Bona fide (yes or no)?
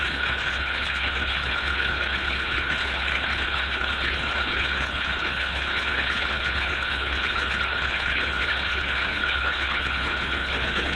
no